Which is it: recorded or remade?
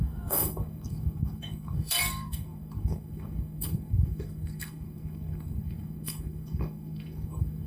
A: remade